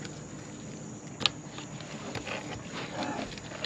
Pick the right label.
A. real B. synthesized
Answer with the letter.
A